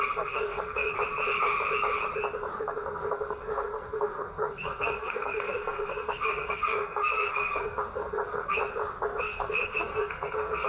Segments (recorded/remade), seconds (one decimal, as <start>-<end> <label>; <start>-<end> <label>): 0.0-0.9 remade; 0.9-2.6 recorded; 2.6-8.6 remade; 8.6-9.2 recorded; 9.2-10.7 remade